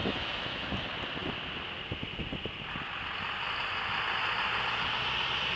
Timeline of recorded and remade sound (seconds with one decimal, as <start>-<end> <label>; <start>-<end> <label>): 0.0-0.7 remade; 0.7-5.6 recorded